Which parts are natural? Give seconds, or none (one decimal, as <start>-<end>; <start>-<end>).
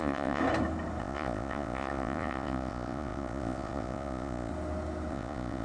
0.4-1.0; 4.5-5.1